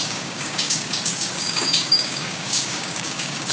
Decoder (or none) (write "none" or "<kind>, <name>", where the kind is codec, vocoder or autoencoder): codec, DAC